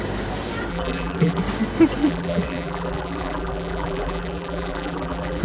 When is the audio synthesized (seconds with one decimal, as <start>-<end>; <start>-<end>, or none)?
0.7-1.4; 2.0-5.4